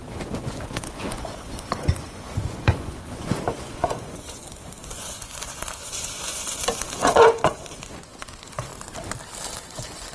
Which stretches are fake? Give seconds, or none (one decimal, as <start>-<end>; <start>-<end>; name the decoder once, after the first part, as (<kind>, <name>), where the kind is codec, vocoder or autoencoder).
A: 0.0-8.7 (vocoder, Vocos); 9.6-10.1